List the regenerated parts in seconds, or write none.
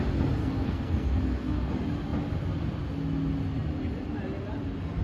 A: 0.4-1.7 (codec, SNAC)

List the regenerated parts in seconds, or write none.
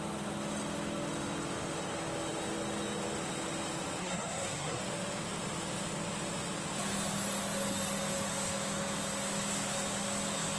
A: 4.0-4.8 (codec, SNAC)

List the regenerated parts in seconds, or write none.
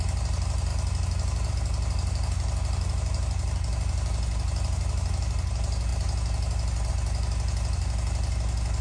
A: none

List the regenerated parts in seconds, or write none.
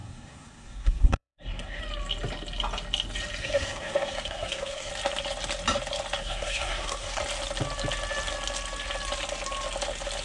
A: 0.0-1.8 (codec, SNAC); 3.4-4.9; 6.2-7.2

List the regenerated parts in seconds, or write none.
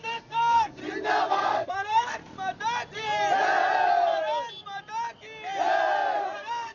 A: 0.0-0.8 (codec, SNAC); 1.3-2.2; 6.2-6.7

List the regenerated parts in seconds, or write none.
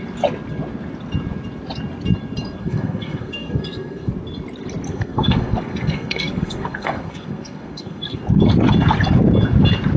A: 2.6-4.1 (codec, SNAC); 4.9-8.2